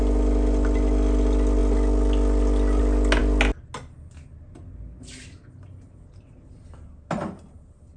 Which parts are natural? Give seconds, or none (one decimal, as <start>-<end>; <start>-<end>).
0.0-8.0